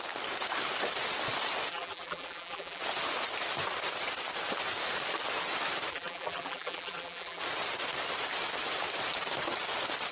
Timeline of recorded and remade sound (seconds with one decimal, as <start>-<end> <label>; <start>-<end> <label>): 0.0-1.7 recorded; 1.7-2.8 remade; 2.8-5.9 recorded; 5.9-7.4 remade; 7.4-10.1 recorded

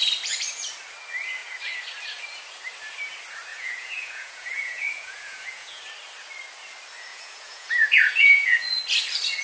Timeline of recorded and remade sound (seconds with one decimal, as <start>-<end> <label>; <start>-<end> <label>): 0.0-3.5 recorded; 3.5-5.8 remade; 5.8-7.1 recorded; 7.1-8.8 remade; 8.8-9.4 recorded